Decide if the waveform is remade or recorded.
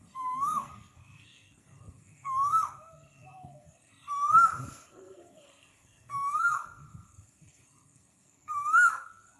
remade